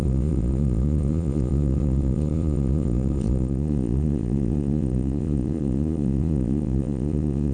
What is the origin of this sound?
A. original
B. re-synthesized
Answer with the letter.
B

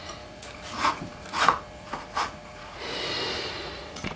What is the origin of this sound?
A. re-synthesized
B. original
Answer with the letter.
A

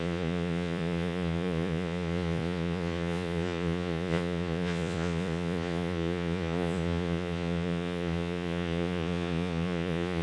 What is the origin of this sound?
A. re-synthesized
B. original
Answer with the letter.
A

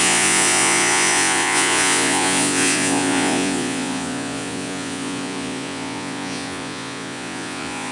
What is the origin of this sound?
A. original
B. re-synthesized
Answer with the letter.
B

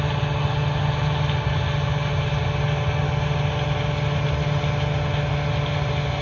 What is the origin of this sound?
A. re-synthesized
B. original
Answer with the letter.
B